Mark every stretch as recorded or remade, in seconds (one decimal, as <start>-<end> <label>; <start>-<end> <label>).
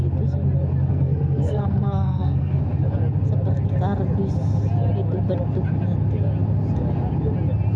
0.0-0.9 recorded; 0.9-2.6 remade; 2.6-7.8 recorded